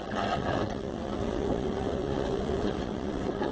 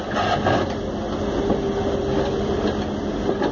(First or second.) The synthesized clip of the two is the first